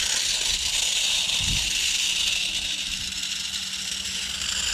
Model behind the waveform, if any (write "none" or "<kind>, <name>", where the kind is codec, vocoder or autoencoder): none